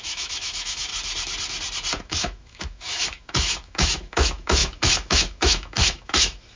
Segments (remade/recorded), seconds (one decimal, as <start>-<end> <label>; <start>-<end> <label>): 0.0-0.9 remade; 0.9-2.0 recorded; 2.0-6.6 remade